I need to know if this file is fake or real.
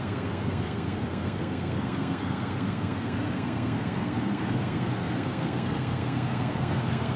fake